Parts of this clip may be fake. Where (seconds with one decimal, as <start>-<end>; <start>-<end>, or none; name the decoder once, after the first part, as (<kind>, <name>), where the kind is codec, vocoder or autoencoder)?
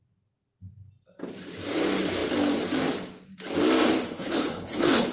4.1-5.1 (codec, HILCodec)